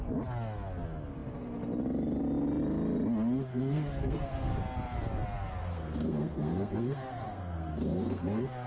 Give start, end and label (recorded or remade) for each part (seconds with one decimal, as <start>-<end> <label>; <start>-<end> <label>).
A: 0.0-3.5 recorded; 3.5-4.5 remade; 4.5-5.6 recorded; 5.6-8.7 remade